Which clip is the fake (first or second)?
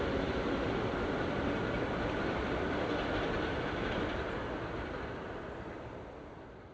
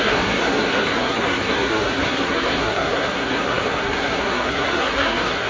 second